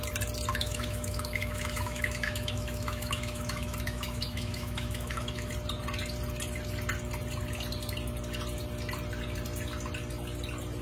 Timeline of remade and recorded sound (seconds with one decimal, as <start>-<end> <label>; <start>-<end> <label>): 0.0-0.5 recorded; 0.5-5.5 remade; 5.5-10.8 recorded